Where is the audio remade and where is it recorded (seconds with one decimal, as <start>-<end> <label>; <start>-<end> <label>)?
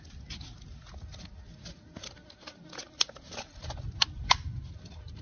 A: 0.0-2.8 recorded; 2.8-3.6 remade; 3.6-5.2 recorded